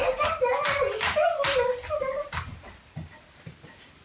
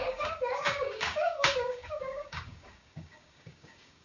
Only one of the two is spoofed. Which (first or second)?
second